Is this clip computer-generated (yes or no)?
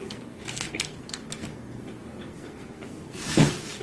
yes